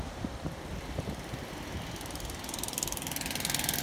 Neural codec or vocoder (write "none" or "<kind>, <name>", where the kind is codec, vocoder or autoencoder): none